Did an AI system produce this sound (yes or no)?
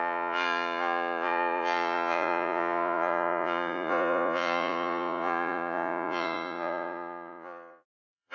yes